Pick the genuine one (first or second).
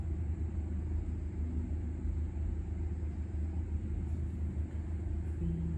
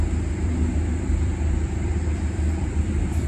first